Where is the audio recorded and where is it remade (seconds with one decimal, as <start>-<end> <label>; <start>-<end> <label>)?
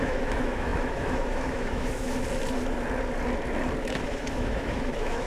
0.0-2.2 remade; 2.2-3.8 recorded; 3.8-5.3 remade